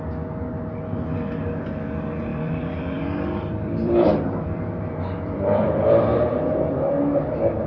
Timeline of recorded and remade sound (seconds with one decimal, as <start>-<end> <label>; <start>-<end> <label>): 0.0-2.3 recorded; 2.3-6.9 remade; 6.9-7.7 recorded